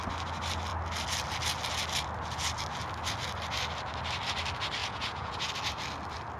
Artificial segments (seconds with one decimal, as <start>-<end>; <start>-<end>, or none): 4.8-5.5